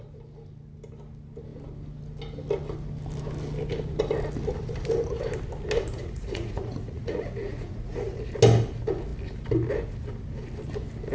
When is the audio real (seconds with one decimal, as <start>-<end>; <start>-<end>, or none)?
0.0-6.0; 8.2-11.1